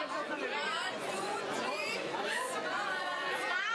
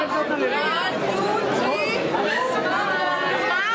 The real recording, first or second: second